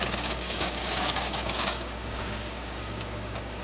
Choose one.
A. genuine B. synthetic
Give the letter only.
B